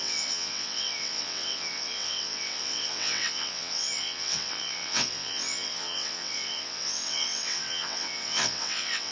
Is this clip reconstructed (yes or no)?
yes